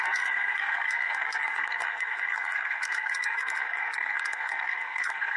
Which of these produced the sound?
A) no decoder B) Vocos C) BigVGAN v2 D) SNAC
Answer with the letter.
D